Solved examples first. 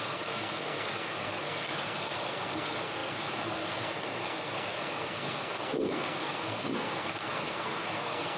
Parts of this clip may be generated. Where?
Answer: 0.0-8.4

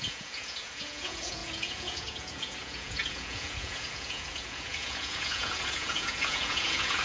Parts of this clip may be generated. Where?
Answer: 0.0-7.0

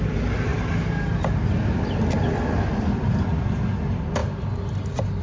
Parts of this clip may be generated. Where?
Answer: none

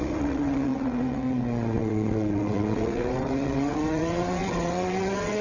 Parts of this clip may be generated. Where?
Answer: 0.0-5.4

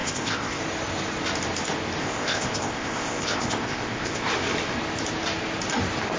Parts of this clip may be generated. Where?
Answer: 0.0-0.6; 2.0-4.3

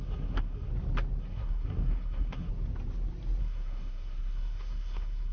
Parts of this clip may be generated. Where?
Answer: 0.0-0.7; 1.2-2.5; 3.4-5.3

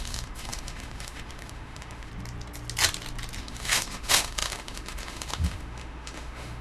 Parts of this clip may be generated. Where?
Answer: 0.0-2.1; 3.4-6.6

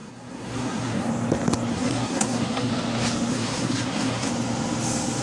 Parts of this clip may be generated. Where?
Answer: 0.0-1.1; 1.7-2.7; 3.3-4.3